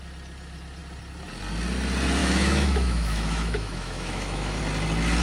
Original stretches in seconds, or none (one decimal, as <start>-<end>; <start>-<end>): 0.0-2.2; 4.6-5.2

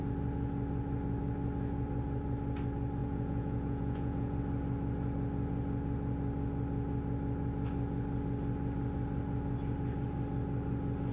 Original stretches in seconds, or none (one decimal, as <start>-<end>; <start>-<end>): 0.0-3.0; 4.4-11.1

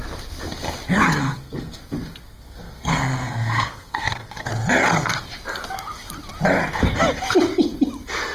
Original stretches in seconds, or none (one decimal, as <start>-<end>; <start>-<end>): 0.0-1.2; 1.8-2.2; 4.5-8.3